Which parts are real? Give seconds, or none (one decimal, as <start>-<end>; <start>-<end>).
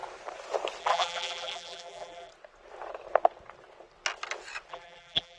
0.0-0.8; 2.3-4.7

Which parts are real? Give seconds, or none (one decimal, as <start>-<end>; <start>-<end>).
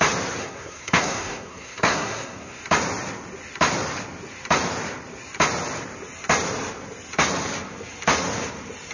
0.0-0.4; 2.6-8.9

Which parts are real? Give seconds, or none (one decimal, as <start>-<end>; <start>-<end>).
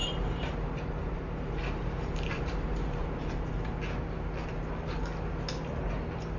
3.8-6.4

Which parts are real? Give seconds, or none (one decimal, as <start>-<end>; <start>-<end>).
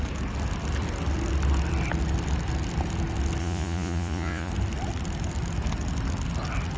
0.0-3.4; 4.5-6.8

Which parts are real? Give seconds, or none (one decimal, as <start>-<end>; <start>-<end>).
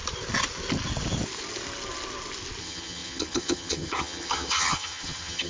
0.0-2.6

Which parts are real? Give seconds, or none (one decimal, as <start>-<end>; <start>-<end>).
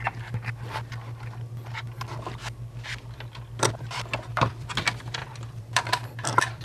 0.0-4.3; 4.8-5.2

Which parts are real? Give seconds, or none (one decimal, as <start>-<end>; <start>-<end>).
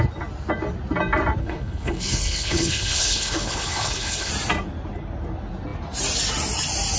0.0-1.4; 4.3-7.0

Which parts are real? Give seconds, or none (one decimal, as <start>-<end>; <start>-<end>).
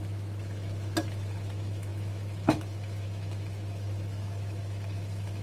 none